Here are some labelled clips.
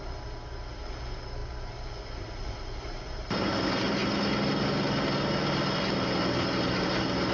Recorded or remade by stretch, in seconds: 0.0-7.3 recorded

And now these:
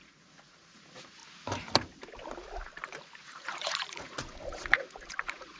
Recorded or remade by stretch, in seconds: 0.0-1.2 remade; 1.2-3.2 recorded; 3.2-5.6 remade

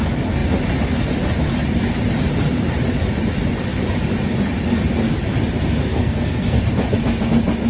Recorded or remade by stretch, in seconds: 0.0-5.9 recorded; 5.9-6.6 remade; 6.6-7.7 recorded

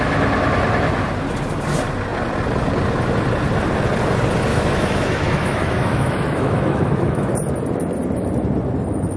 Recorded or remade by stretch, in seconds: 0.0-4.5 recorded; 4.5-7.3 remade; 7.3-9.2 recorded

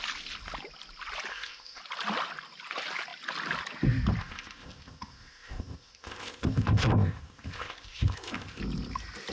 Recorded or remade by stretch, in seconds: 0.0-1.3 recorded; 1.3-1.8 remade; 1.8-4.2 recorded; 4.2-8.6 remade; 8.6-9.3 recorded

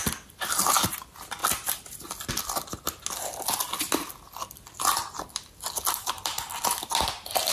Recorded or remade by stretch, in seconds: 0.0-7.5 recorded

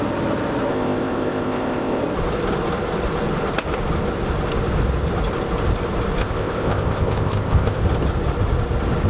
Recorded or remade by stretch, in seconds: 0.0-0.7 recorded; 0.7-2.0 remade; 2.0-6.2 recorded; 6.2-7.8 remade; 7.8-9.1 recorded